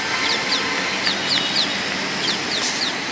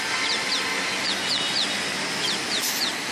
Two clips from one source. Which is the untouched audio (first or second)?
second